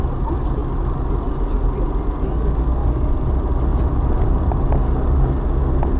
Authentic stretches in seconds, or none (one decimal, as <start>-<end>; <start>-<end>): 0.0-2.8; 3.3-3.7; 4.5-6.0